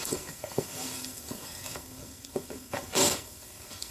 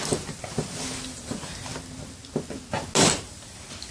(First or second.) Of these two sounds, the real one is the second